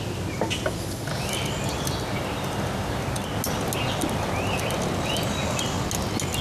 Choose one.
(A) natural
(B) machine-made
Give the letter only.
A